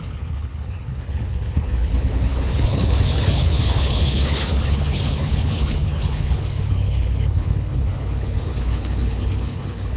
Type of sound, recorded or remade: remade